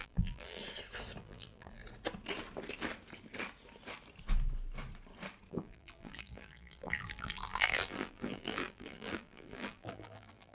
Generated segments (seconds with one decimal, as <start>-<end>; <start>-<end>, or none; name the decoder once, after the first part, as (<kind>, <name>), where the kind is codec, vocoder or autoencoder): 0.0-0.6 (vocoder, BigVGAN v2); 1.2-1.8; 5.5-10.5